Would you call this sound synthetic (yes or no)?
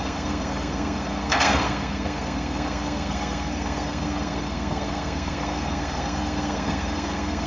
yes